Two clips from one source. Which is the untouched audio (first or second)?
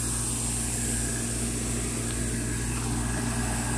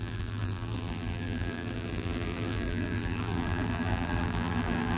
first